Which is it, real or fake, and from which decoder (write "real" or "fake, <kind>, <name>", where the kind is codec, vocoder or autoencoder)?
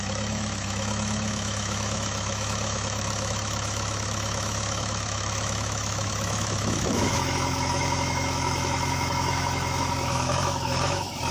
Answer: fake, autoencoder, DAC-VAE